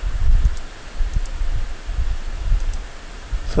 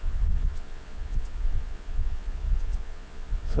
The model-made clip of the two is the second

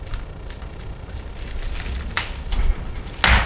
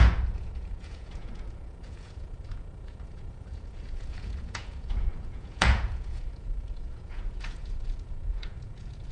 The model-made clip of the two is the second